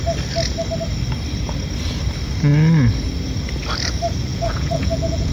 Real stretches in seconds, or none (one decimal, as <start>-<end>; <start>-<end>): 0.0-4.3